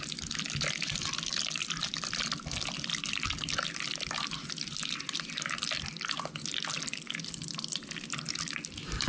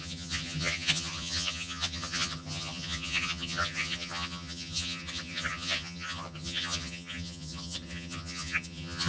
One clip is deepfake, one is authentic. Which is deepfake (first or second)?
second